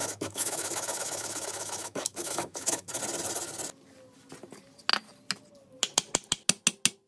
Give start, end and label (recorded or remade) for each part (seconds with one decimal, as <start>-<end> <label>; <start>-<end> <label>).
0.0-3.0 remade; 3.0-7.1 recorded